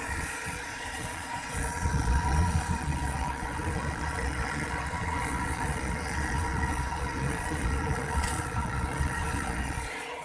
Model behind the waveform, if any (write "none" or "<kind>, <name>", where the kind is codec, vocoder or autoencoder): vocoder, Vocos